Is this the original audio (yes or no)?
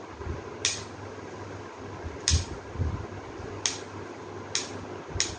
yes